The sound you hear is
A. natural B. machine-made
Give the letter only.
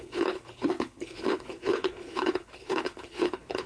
B